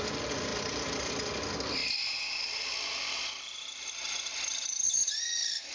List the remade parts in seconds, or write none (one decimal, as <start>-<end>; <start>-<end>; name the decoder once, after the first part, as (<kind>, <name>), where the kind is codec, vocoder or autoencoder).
none